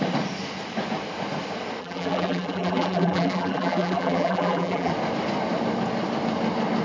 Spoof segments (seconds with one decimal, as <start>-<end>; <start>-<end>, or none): 1.8-4.9